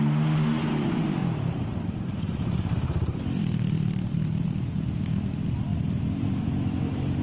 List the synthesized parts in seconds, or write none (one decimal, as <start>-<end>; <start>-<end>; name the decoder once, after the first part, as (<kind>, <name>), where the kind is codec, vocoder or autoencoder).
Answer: 1.2-4.5 (vocoder, BigVGAN v2); 5.7-7.2